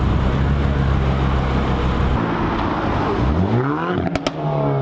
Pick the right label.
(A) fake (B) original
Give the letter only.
B